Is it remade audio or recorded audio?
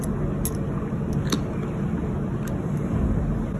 recorded